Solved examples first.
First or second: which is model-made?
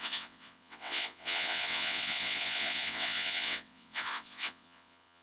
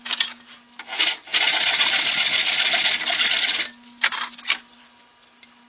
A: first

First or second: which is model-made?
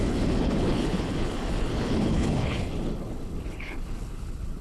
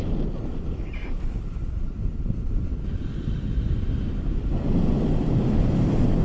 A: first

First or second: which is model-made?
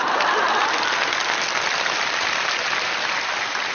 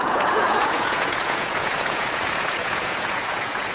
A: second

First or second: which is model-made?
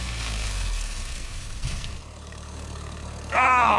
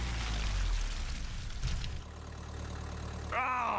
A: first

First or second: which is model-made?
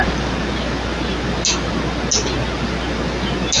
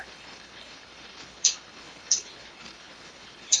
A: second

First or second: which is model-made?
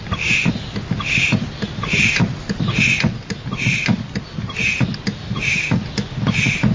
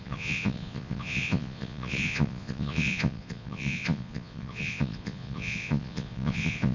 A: second